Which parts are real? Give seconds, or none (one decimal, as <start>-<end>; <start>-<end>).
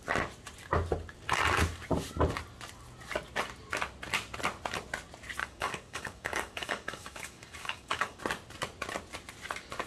0.0-5.4; 8.2-9.9